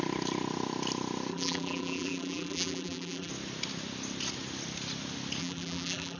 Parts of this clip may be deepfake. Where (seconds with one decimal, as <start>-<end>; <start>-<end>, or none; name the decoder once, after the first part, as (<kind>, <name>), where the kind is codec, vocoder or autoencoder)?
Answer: 1.3-3.3 (vocoder, BigVGAN v2); 5.4-6.2